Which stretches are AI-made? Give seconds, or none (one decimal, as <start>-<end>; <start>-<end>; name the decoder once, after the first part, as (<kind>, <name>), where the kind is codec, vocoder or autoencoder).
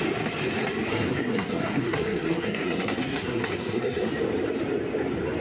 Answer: 0.9-4.1 (codec, SNAC)